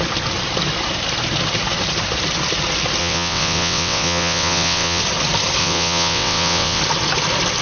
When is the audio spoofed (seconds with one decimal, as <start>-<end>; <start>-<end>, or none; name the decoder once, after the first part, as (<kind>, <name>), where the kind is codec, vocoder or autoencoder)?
3.0-5.0 (vocoder, WaveNeXt); 5.6-6.8